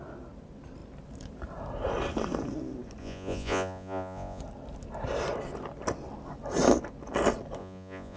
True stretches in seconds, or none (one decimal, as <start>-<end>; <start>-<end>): 0.0-3.0; 4.4-7.6